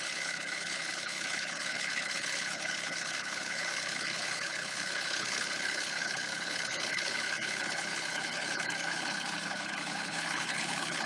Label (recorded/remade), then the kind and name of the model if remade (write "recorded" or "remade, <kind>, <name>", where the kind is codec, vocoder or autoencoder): remade, codec, HILCodec